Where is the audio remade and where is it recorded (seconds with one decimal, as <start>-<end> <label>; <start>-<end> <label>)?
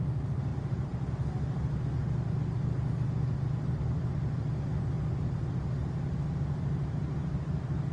0.0-0.5 recorded; 0.5-1.1 remade; 1.1-2.0 recorded; 2.0-4.1 remade; 4.1-6.8 recorded; 6.8-7.9 remade